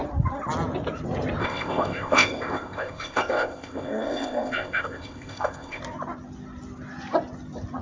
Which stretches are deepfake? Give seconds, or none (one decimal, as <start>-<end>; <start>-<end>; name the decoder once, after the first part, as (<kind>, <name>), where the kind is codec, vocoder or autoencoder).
1.4-5.8 (codec, ZipCodec)